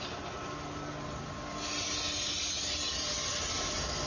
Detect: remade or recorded recorded